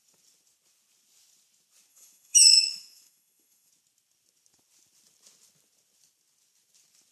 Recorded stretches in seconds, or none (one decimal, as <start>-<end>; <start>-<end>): 0.0-1.9; 3.7-7.1